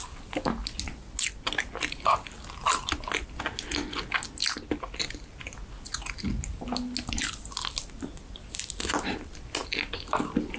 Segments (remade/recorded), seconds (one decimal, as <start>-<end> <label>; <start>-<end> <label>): 0.0-10.6 recorded